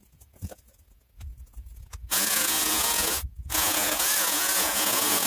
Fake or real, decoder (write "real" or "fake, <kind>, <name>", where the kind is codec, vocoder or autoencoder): fake, vocoder, Vocos